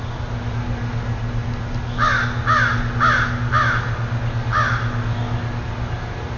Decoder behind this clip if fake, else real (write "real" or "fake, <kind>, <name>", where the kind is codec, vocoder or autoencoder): real